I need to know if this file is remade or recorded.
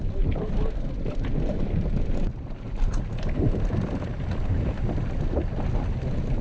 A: recorded